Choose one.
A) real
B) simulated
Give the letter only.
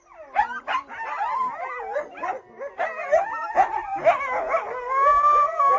A